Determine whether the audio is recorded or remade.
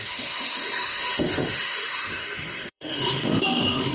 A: remade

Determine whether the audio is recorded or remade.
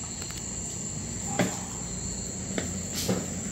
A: recorded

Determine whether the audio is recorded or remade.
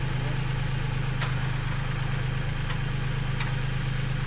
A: recorded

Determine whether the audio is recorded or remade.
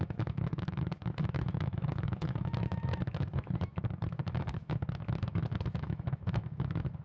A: remade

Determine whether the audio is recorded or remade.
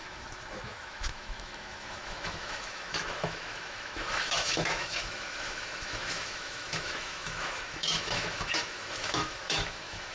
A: remade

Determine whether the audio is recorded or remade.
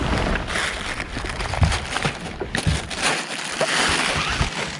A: recorded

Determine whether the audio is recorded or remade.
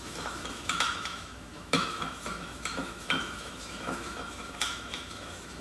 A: remade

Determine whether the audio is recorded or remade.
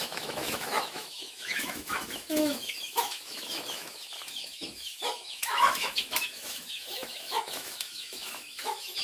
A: remade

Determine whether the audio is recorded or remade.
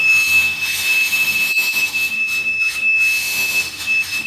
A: remade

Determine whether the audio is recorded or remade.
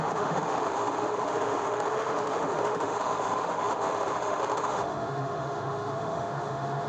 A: remade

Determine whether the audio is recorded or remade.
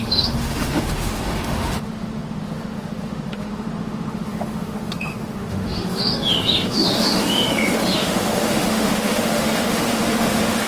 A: remade